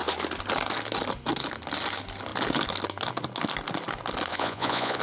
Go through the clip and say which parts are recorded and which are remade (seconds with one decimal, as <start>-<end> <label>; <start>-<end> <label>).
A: 0.0-4.3 recorded; 4.3-5.0 remade